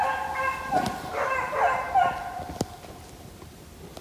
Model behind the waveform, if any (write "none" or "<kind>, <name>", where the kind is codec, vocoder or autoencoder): none